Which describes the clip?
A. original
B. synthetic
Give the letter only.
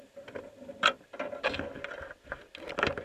A